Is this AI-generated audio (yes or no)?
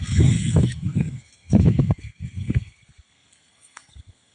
yes